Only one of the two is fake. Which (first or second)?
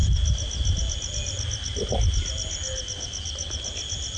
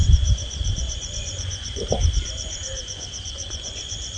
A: second